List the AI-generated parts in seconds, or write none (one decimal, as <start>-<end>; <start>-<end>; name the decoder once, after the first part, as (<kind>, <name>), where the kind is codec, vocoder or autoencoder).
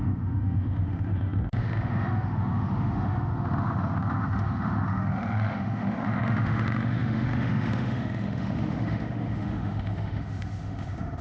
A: 0.0-11.2 (autoencoder, DAC-VAE)